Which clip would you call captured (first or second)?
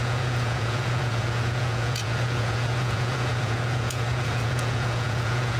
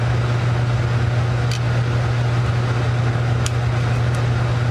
second